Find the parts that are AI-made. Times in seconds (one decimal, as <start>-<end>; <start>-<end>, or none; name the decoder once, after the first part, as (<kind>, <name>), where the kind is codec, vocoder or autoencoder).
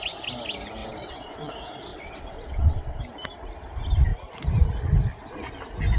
0.8-1.5 (vocoder, WaveNeXt); 1.9-3.0